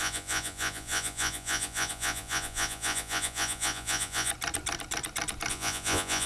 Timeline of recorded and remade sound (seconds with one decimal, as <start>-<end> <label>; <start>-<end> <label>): 0.0-4.3 remade; 4.3-5.5 recorded; 5.5-6.3 remade